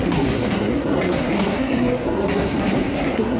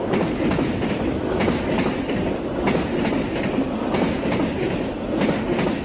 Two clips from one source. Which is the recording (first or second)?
second